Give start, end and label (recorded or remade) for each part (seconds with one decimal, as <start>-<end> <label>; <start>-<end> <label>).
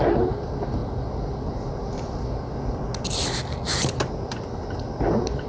0.0-5.5 recorded